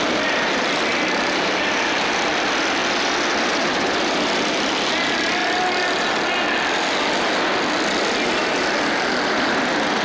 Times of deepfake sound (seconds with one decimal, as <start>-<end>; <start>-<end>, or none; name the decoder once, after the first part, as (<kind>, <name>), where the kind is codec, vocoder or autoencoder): none

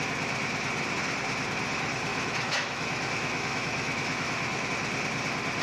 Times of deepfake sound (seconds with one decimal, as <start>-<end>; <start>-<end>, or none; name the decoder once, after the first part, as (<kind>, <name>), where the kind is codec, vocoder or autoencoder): 2.1-4.7 (autoencoder, DAC-VAE)

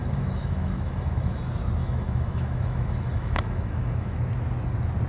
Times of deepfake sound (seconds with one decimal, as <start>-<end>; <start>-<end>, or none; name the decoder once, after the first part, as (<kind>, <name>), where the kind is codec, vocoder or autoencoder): 0.0-1.4 (autoencoder, DAC-VAE); 1.8-4.2

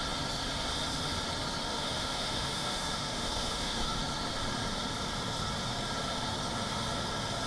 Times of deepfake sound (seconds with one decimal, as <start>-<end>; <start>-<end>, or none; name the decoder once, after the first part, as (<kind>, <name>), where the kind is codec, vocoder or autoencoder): 1.6-4.0 (autoencoder, DAC-VAE)

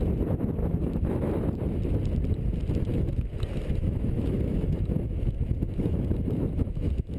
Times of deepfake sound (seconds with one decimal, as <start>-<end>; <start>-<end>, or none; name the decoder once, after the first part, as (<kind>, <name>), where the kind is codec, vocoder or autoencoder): 0.6-1.3 (autoencoder, DAC-VAE); 2.9-7.2

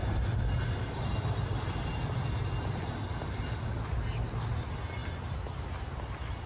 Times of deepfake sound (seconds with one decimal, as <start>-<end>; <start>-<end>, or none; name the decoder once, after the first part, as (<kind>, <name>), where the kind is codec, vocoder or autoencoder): none